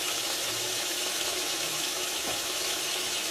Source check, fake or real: fake